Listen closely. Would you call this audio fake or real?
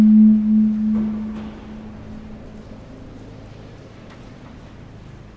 real